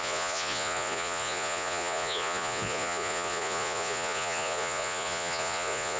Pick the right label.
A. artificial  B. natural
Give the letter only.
A